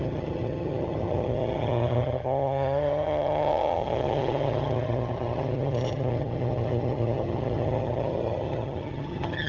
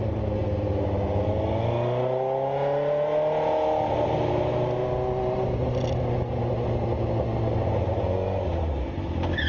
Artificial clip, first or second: first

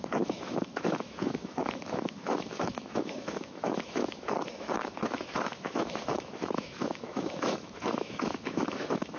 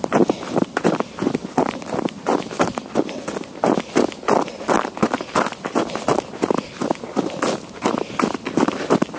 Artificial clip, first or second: first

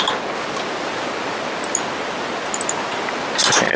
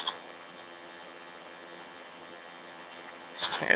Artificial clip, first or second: second